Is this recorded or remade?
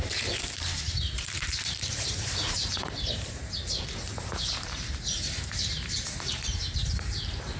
remade